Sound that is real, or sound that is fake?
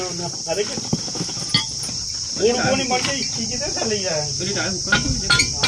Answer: real